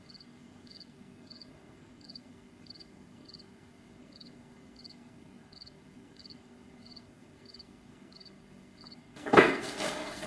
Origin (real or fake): fake